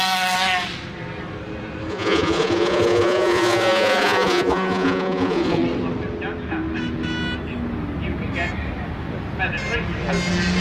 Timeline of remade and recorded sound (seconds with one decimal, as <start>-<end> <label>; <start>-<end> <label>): 0.0-1.9 recorded; 1.9-5.6 remade; 5.6-10.6 recorded